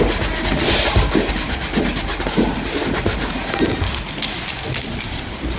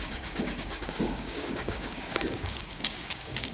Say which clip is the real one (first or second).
first